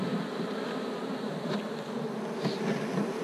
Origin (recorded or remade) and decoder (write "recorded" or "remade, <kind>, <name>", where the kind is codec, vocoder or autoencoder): recorded